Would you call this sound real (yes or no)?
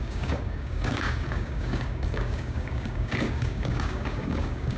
no